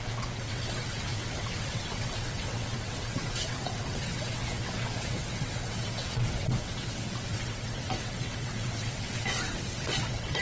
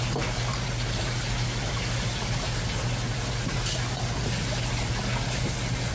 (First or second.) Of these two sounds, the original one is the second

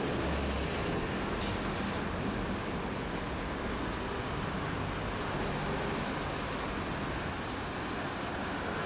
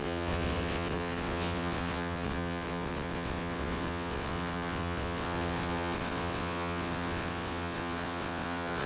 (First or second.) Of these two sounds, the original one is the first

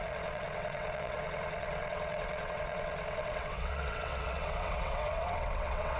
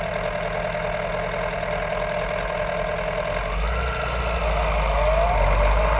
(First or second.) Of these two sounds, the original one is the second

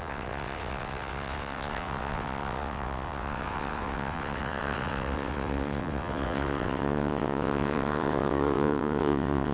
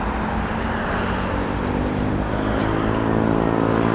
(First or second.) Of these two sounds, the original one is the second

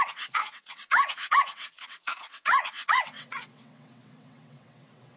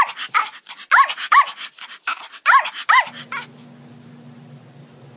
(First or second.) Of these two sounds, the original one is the second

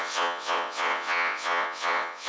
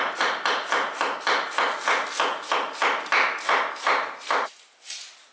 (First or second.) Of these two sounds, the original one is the second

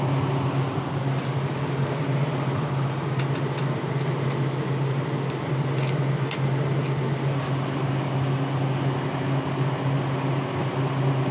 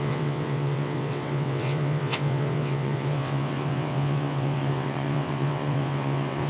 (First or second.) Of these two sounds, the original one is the first